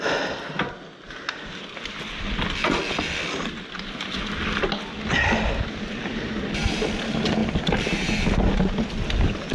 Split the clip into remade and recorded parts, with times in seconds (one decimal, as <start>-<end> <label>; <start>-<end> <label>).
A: 0.0-9.5 recorded